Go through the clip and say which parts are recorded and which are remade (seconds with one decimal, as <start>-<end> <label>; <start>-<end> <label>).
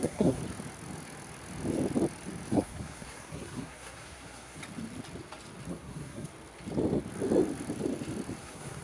0.0-0.4 remade; 0.4-2.5 recorded; 2.5-4.6 remade; 4.6-5.7 recorded; 5.7-6.3 remade; 6.3-8.4 recorded; 8.4-8.8 remade